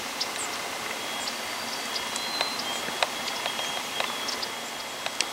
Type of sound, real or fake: real